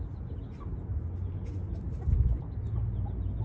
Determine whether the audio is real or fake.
real